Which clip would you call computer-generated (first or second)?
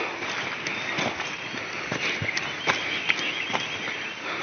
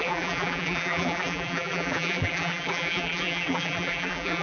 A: second